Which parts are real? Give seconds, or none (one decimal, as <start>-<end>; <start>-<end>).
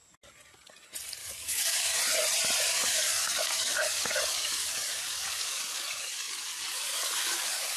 0.0-1.2; 2.0-2.7